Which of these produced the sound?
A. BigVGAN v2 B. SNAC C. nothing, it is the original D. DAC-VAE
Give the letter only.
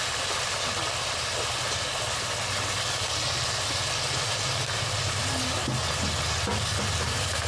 C